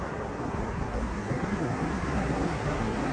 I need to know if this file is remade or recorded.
remade